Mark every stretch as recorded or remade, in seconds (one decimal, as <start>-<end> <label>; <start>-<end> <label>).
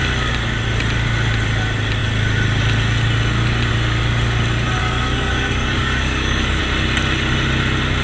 0.0-4.8 recorded; 4.8-6.6 remade; 6.6-8.0 recorded